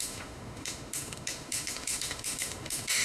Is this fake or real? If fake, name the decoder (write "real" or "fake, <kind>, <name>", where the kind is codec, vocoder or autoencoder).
fake, autoencoder, DAC-VAE